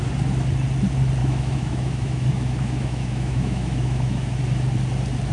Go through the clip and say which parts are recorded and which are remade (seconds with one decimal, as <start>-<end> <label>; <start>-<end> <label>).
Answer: 0.0-1.2 recorded; 1.2-4.4 remade; 4.4-5.3 recorded